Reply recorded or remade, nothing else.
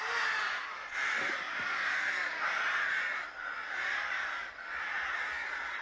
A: recorded